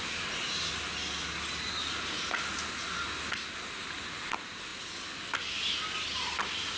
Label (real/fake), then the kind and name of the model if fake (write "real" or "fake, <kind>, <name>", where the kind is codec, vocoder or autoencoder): real